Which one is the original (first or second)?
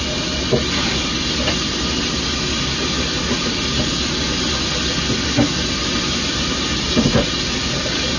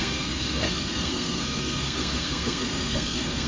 first